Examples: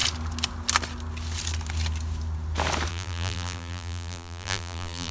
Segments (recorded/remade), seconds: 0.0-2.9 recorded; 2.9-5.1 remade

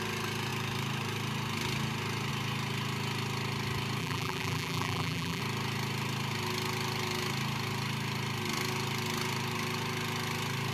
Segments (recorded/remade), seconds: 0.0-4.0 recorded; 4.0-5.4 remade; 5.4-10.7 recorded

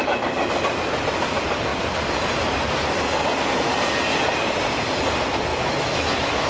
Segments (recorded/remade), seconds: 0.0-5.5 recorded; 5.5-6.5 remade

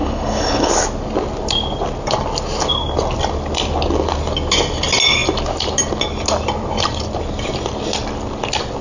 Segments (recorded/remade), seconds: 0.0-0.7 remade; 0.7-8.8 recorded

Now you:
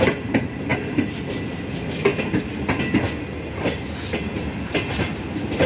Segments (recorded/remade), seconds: 0.0-5.7 recorded